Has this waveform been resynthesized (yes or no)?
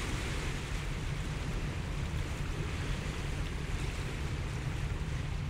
yes